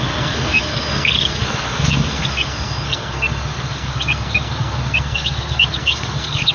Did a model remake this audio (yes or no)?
yes